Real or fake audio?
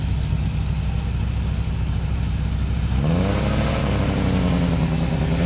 real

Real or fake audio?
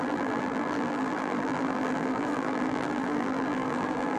fake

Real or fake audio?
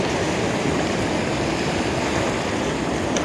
real